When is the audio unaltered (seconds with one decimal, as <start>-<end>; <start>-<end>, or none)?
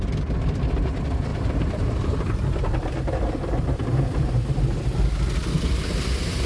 0.0-1.3; 4.3-6.5